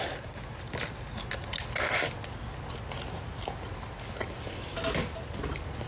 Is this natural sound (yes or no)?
yes